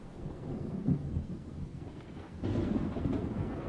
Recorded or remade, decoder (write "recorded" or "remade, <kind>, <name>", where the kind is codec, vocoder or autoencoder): remade, codec, SNAC